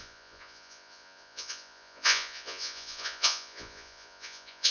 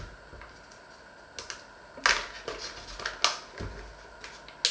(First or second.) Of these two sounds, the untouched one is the second